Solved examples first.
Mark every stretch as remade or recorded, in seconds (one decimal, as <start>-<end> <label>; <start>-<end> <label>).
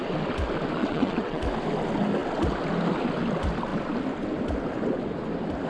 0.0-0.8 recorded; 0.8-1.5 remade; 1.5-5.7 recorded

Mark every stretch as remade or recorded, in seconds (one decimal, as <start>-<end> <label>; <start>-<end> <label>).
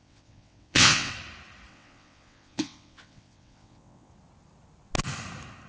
0.0-1.1 remade; 1.1-1.7 recorded; 1.7-4.1 remade; 4.1-5.7 recorded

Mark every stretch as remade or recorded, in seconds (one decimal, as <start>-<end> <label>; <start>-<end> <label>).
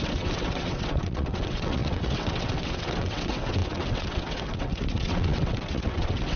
0.0-6.4 remade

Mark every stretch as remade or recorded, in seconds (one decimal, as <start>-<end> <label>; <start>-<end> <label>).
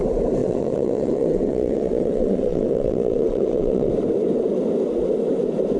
0.0-0.4 recorded; 0.4-3.9 remade; 3.9-5.8 recorded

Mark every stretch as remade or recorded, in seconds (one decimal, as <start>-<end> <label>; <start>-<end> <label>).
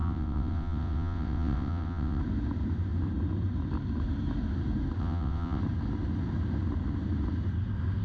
0.0-2.2 remade; 2.2-5.0 recorded; 5.0-5.6 remade; 5.6-8.0 recorded